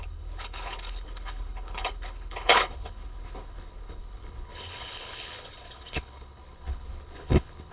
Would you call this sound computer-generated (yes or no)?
yes